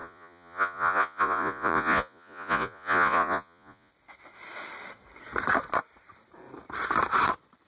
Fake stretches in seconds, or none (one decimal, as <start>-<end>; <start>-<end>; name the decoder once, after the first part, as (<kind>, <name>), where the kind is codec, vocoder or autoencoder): 0.0-3.9 (vocoder, Vocos)